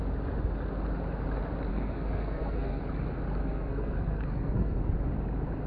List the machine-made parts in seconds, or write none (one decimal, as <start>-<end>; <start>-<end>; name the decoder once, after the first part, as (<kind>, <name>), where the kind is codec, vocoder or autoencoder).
1.7-2.8 (codec, SNAC); 3.4-4.9